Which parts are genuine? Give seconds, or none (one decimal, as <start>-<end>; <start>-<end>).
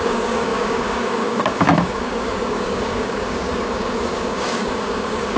none